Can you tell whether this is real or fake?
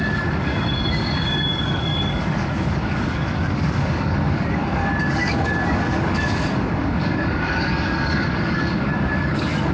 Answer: fake